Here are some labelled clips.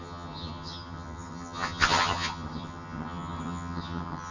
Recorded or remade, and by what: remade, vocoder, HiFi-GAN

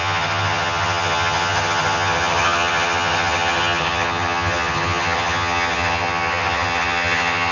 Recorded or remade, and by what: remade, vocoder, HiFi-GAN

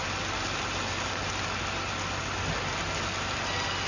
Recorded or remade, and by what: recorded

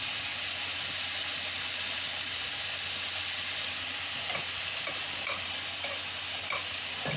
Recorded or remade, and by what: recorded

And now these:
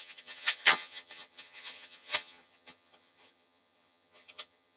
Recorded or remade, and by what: remade, vocoder, HiFi-GAN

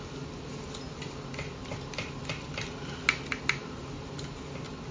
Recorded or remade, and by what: recorded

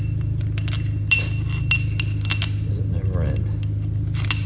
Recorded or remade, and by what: recorded